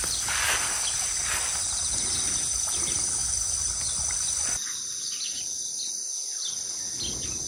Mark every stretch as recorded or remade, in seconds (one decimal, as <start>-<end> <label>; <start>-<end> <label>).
0.0-7.5 recorded